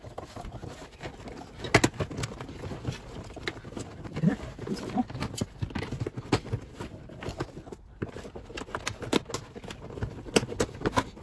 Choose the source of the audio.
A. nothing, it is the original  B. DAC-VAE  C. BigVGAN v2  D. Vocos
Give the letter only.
A